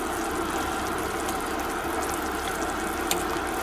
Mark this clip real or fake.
real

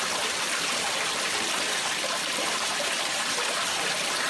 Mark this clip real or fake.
fake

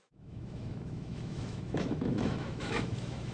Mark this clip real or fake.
fake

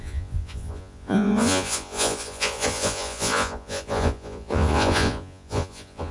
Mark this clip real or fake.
fake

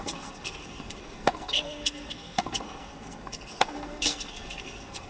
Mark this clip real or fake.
fake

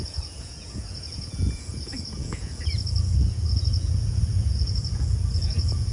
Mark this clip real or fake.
fake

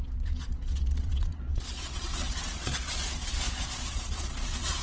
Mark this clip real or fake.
fake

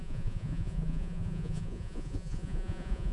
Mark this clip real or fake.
fake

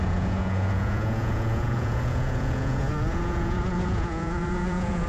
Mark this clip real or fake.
fake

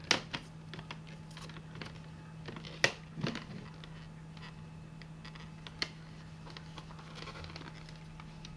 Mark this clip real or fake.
real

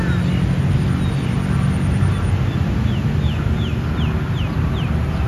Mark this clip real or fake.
real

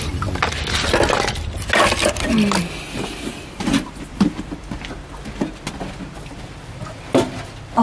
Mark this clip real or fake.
real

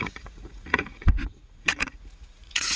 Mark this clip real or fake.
fake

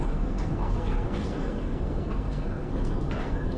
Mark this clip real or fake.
fake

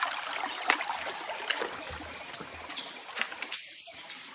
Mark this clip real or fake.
real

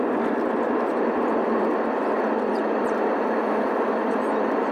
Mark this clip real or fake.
fake